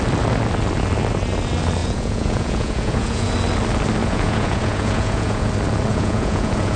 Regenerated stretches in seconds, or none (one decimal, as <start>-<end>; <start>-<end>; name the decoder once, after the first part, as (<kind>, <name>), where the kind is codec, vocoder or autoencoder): 1.8-3.3 (vocoder, Vocos); 4.0-5.5; 5.9-6.8